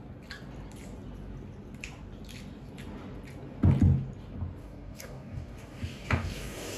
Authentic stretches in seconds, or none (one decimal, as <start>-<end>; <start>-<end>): 0.0-4.6